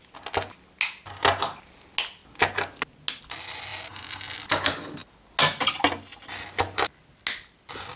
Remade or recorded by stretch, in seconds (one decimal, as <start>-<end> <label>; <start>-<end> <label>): 0.0-8.0 recorded